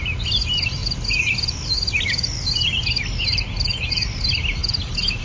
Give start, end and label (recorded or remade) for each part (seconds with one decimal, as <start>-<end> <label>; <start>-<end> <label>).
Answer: 0.0-0.8 remade; 0.8-3.9 recorded; 3.9-4.6 remade; 4.6-5.2 recorded